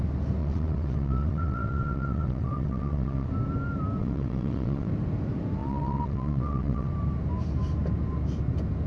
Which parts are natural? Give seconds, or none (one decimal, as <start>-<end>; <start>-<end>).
0.0-0.4; 3.3-4.0; 4.9-5.6; 6.9-8.9